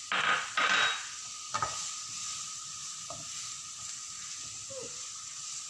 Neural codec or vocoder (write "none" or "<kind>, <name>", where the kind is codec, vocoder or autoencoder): none